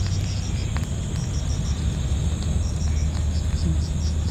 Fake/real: real